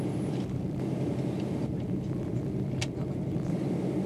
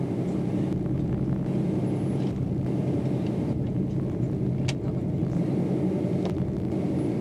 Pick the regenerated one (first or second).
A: first